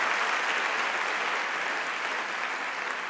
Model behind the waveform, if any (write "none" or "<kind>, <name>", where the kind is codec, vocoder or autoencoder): none